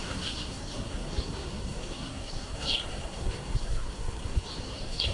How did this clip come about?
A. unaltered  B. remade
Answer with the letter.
B